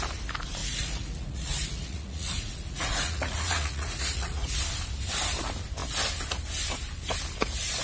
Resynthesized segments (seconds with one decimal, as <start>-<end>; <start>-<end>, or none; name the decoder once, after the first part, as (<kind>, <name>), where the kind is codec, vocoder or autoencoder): 0.6-4.6 (vocoder, Vocos)